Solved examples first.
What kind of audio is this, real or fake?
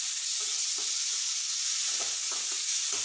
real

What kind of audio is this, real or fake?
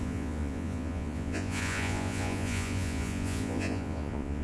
fake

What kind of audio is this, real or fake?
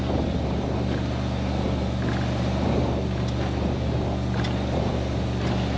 real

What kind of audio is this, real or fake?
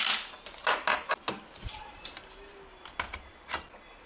real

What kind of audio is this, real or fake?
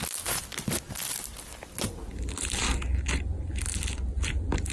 real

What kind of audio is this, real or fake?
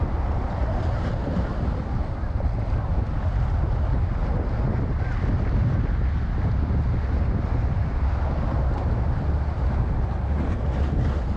real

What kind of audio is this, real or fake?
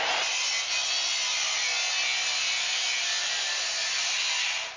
real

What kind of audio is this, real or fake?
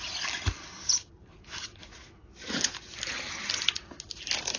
real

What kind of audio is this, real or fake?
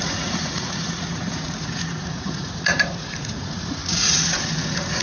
fake